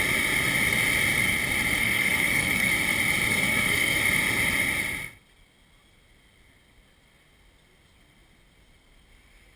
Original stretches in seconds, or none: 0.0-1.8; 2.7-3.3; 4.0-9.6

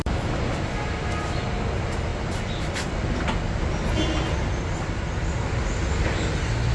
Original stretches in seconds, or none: 0.0-6.7

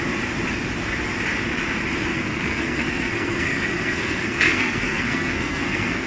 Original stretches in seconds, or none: 0.0-2.1

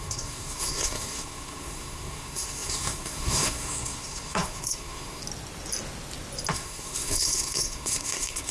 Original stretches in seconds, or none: 5.2-6.5

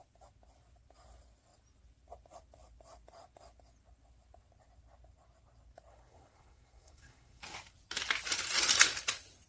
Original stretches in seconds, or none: 0.0-5.9; 7.4-9.5